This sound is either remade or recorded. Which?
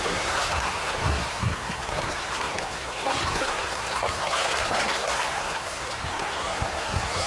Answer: remade